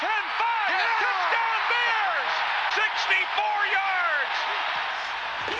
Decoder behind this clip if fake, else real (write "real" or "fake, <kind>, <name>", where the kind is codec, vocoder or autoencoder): real